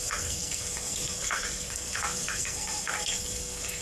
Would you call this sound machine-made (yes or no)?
yes